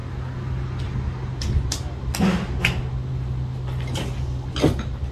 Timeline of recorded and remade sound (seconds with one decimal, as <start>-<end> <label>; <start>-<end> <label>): 0.0-5.1 recorded